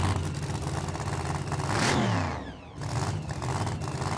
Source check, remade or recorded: recorded